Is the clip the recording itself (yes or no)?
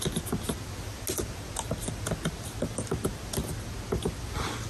yes